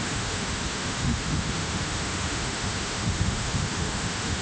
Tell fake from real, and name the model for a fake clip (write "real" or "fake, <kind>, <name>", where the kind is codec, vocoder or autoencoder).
fake, autoencoder, DAC-VAE